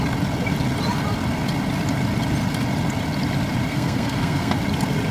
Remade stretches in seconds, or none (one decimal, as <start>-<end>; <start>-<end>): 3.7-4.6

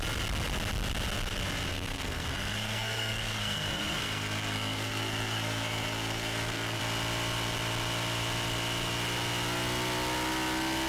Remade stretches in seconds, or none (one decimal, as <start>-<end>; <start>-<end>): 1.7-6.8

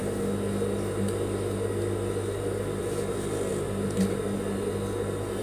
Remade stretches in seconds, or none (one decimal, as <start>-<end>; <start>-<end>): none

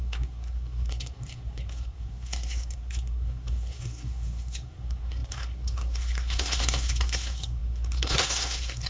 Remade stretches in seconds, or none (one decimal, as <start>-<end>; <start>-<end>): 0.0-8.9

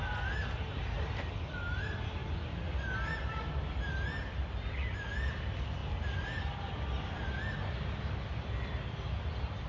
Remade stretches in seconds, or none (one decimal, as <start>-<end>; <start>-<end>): none

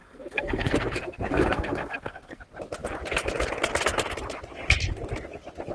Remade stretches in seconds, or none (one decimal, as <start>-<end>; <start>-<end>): 0.0-2.4